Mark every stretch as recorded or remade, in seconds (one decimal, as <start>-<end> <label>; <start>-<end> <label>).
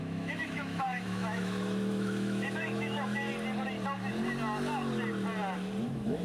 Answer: 0.0-3.3 remade; 3.3-5.8 recorded; 5.8-6.2 remade